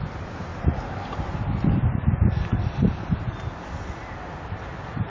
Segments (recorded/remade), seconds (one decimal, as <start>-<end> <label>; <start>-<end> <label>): 0.0-5.1 recorded